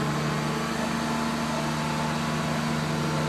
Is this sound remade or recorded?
recorded